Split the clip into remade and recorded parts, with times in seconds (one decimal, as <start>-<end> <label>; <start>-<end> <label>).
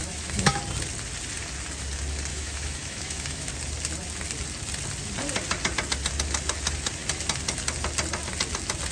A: 0.0-0.6 remade; 0.6-2.3 recorded; 2.3-3.5 remade; 3.5-8.9 recorded